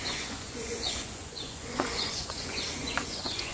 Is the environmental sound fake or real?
fake